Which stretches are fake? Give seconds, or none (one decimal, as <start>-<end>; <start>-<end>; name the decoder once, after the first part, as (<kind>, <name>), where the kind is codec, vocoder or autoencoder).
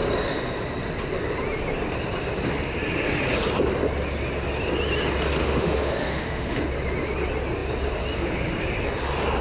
5.4-6.6 (autoencoder, DAC-VAE)